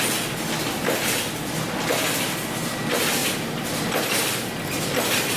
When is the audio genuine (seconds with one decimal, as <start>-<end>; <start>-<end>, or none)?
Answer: 0.0-5.4